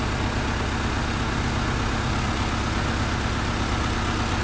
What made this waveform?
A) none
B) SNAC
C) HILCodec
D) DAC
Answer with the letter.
A